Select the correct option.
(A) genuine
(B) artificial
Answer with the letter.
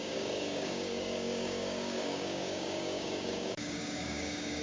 B